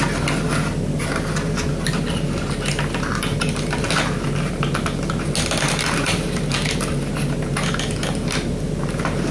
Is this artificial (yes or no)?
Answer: no